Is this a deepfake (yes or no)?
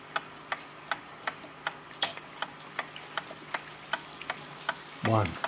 no